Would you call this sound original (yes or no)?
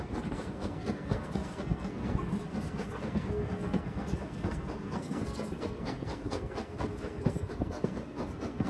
no